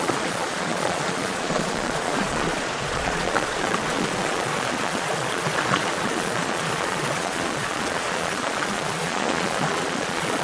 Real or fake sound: fake